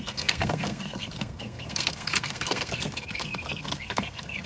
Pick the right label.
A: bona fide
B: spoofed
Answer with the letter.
B